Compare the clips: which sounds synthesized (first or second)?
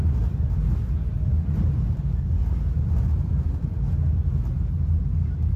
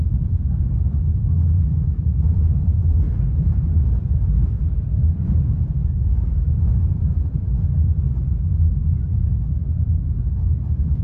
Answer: second